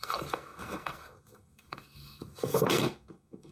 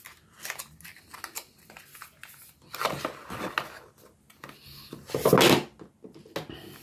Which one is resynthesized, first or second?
first